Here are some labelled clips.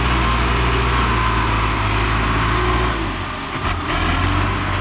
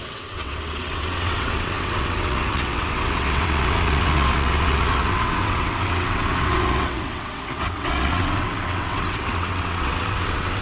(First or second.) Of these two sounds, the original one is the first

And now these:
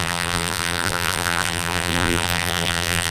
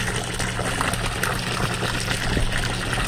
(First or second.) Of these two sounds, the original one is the second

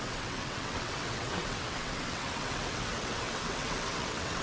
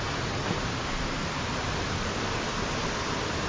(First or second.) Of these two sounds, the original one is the second